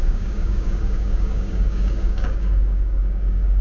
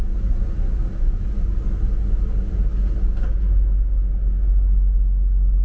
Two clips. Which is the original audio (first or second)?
second